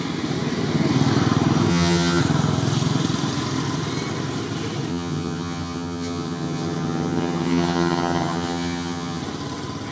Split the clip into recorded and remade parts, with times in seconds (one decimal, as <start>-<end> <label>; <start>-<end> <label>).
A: 0.0-1.7 recorded; 1.7-2.2 remade; 2.2-4.9 recorded; 4.9-9.2 remade; 9.2-9.9 recorded